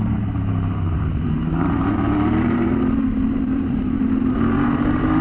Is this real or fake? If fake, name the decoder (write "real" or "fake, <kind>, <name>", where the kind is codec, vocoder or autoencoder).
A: fake, vocoder, BigVGAN v2